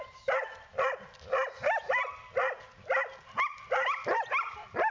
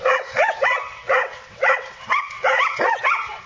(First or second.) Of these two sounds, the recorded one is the first